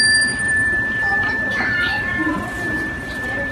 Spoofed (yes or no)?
yes